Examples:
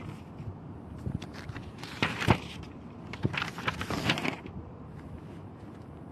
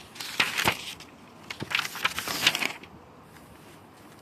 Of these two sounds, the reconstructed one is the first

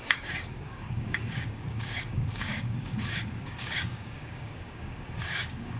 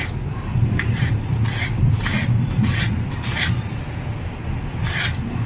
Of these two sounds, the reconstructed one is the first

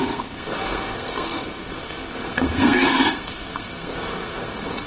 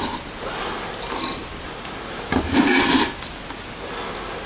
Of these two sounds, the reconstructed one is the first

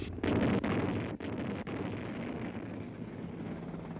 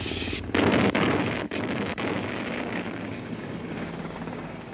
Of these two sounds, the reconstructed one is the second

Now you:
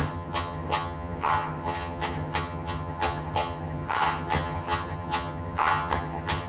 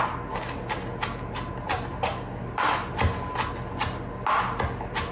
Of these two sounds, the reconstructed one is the first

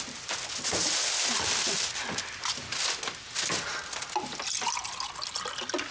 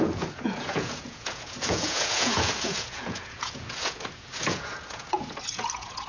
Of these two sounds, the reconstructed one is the second